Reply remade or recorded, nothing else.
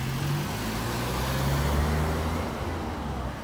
recorded